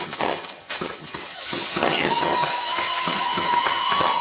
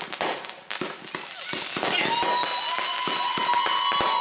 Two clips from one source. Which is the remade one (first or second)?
first